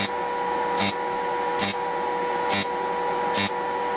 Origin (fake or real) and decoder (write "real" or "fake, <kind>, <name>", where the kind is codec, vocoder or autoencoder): real